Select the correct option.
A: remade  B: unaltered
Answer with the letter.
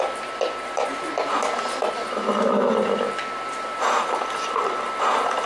B